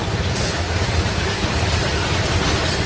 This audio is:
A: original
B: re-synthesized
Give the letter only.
A